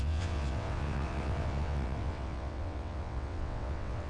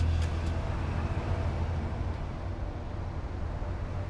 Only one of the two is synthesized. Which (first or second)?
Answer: first